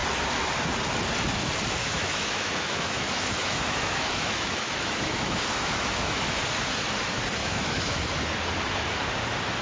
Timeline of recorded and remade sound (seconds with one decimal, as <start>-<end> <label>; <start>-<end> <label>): 0.0-1.8 recorded; 1.8-6.3 remade; 6.3-7.4 recorded; 7.4-8.0 remade; 8.0-9.6 recorded